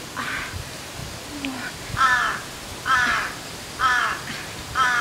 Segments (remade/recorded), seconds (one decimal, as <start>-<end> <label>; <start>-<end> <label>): 0.0-5.0 recorded